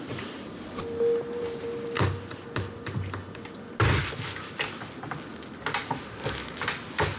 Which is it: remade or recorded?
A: recorded